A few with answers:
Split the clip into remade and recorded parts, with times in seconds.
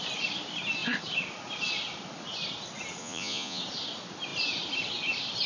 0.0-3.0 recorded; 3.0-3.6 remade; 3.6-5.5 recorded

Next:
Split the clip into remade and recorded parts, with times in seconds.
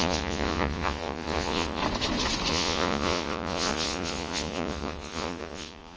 0.0-1.8 remade; 1.8-2.5 recorded; 2.5-6.0 remade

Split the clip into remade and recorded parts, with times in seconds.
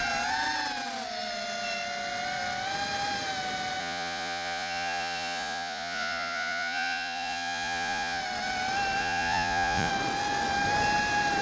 0.0-3.8 recorded; 3.8-8.2 remade; 8.2-9.0 recorded; 9.0-9.9 remade; 9.9-11.4 recorded